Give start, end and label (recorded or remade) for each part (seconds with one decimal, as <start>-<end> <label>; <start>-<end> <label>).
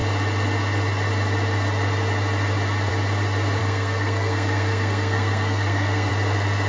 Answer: 0.0-3.6 recorded; 3.6-6.1 remade; 6.1-6.7 recorded